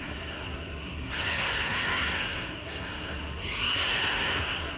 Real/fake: fake